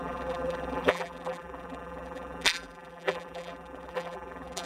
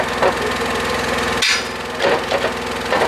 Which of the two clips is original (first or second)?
second